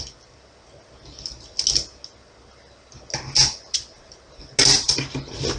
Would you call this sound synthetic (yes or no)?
no